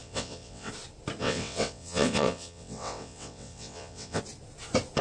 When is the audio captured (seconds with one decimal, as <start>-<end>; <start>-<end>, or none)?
0.7-1.2; 4.2-5.0